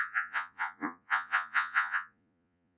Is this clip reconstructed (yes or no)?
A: yes